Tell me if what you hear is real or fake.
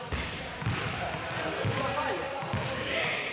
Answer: real